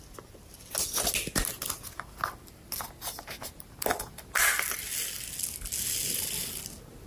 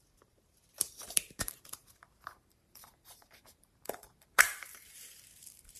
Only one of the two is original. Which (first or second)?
first